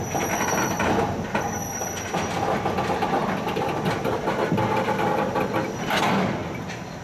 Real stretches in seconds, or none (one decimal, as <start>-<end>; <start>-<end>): 0.0-7.0